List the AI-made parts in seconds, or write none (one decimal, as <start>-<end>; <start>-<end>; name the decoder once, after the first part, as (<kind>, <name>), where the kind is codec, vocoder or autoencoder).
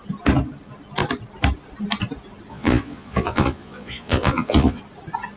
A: 2.5-4.8 (vocoder, Vocos)